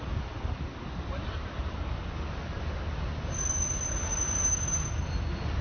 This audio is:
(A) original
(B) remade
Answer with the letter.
A